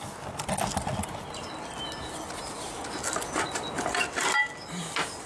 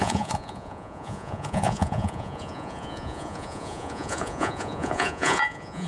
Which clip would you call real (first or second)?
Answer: first